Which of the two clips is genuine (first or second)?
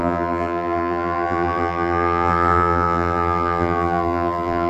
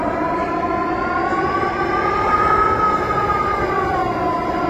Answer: second